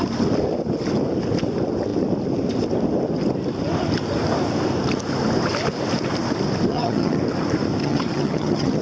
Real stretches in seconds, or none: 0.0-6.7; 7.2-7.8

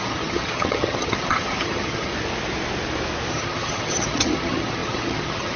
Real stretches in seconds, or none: 2.1-3.3

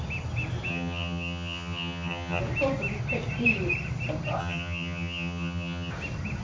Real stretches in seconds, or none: 0.0-0.7; 2.4-4.4; 5.9-6.4

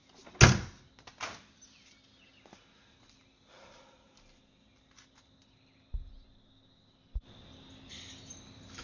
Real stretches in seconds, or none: 0.0-8.8

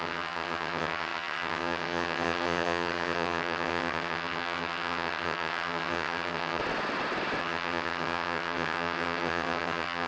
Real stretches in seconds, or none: 6.6-7.4